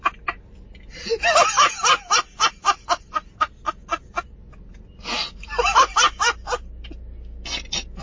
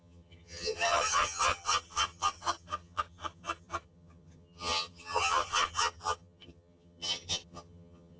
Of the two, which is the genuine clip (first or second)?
first